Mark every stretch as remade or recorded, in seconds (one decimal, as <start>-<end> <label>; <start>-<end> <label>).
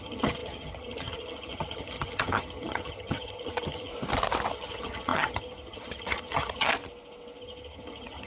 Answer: 0.0-3.9 remade; 3.9-4.5 recorded; 4.5-6.7 remade; 6.7-7.4 recorded; 7.4-8.3 remade